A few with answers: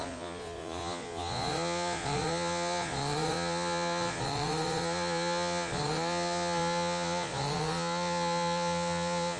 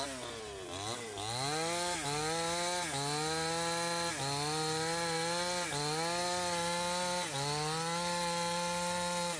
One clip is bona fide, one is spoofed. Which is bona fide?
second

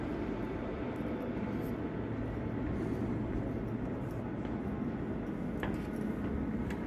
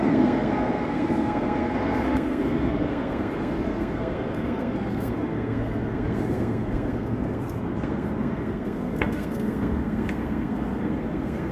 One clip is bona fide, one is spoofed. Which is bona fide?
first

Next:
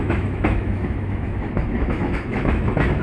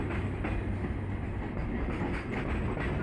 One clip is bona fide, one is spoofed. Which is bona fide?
second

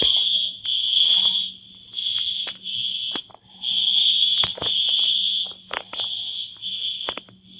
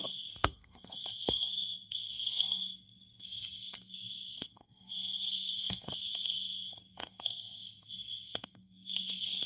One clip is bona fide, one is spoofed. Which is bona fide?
first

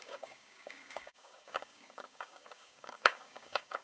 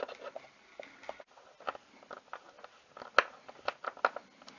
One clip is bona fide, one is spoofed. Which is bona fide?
second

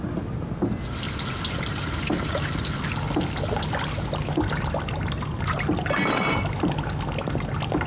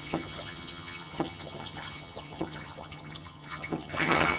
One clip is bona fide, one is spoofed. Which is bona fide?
first